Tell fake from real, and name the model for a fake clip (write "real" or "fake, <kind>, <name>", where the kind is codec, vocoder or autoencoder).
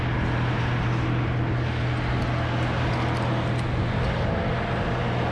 real